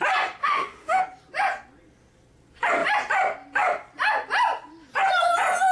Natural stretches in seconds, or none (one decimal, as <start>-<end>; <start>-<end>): 0.0-0.4; 1.0-5.7